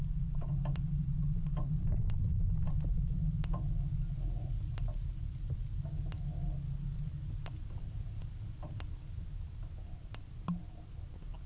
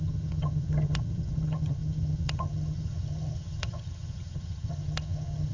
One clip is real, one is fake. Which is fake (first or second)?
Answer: second